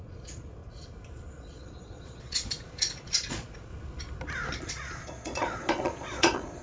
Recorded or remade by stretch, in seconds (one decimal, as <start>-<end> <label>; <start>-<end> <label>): 0.0-0.6 remade; 0.6-1.3 recorded; 1.3-3.7 remade; 3.7-4.7 recorded; 4.7-6.6 remade